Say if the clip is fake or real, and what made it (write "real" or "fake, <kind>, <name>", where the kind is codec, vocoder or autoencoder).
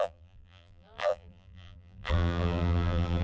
fake, vocoder, BigVGAN v2